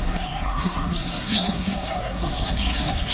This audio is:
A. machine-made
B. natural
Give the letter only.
A